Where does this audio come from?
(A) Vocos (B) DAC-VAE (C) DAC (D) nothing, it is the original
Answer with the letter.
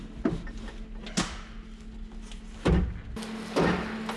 D